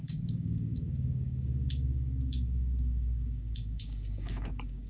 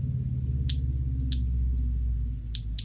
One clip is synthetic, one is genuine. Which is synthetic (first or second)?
first